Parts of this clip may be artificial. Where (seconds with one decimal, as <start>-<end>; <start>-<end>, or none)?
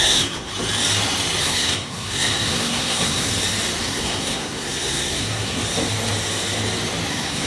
0.0-0.5; 1.4-3.3; 3.8-5.6; 7.1-7.5